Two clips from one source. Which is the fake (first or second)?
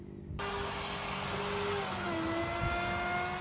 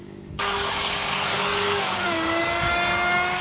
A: second